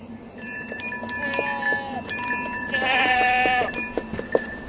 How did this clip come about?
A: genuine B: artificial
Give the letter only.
A